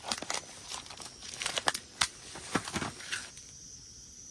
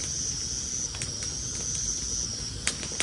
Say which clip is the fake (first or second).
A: first